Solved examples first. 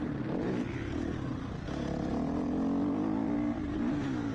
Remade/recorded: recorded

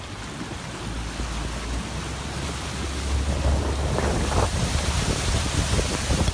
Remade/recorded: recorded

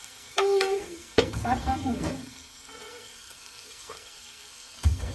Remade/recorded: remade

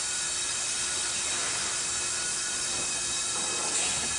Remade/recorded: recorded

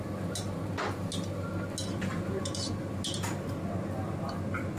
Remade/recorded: recorded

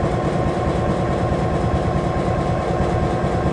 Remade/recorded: recorded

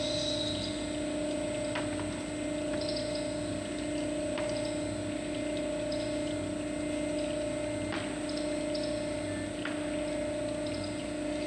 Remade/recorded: recorded